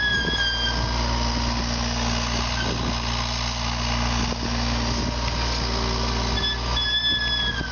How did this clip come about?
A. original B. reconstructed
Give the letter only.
A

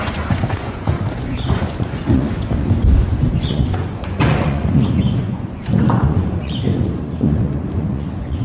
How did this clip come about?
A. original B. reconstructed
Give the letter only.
B